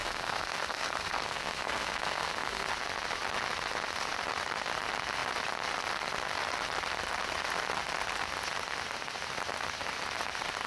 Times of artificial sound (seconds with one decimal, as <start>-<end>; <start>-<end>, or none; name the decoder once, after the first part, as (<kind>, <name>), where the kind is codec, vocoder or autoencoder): 0.0-2.7 (codec, SNAC)